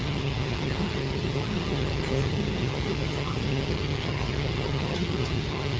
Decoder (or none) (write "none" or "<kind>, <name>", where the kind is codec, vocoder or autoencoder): vocoder, HiFi-GAN